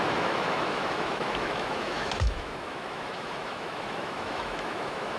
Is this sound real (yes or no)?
no